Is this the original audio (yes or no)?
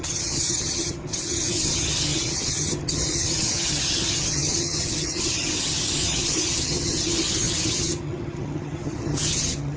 no